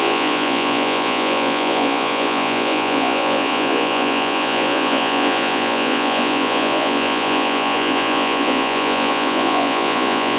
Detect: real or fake fake